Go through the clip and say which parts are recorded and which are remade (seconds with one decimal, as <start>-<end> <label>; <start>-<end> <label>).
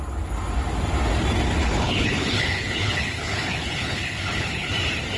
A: 0.0-1.6 recorded; 1.6-4.7 remade; 4.7-5.2 recorded